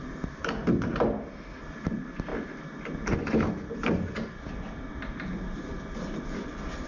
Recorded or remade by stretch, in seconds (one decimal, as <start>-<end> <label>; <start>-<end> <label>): 0.0-6.9 recorded